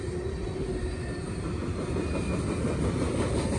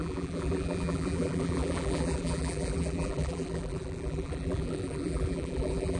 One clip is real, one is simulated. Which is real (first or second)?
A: first